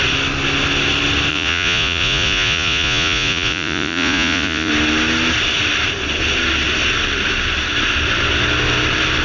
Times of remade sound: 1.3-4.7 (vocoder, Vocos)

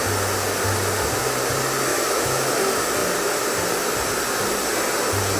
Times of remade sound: 1.9-2.5 (autoencoder, DAC-VAE)

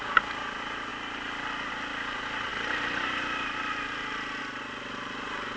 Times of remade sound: none

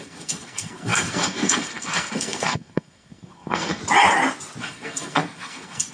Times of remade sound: 0.0-3.8 (codec, SNAC); 4.6-5.9

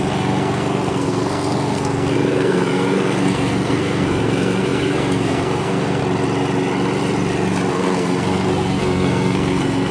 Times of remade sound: 0.0-6.0 (codec, SNAC); 7.7-9.9

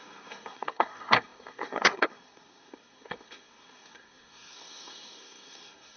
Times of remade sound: 0.0-6.0 (codec, SNAC)